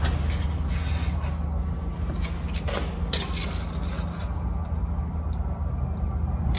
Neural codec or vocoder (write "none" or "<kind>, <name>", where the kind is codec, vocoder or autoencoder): none